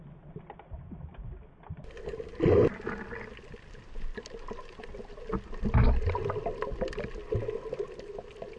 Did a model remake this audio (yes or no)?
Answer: no